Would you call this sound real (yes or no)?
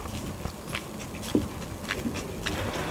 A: yes